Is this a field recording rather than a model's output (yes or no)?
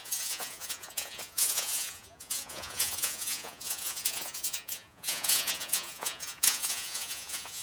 no